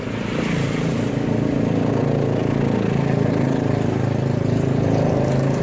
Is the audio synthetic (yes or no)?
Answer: no